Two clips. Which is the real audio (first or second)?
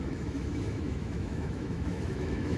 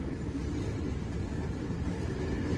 second